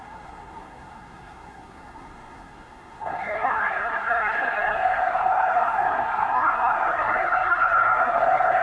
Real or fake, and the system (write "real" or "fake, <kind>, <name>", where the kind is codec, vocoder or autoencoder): fake, codec, SNAC